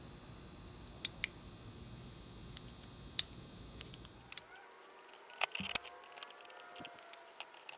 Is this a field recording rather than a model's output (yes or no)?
yes